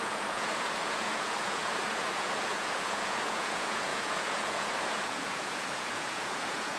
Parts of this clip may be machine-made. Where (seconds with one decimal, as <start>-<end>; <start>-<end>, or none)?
0.0-6.8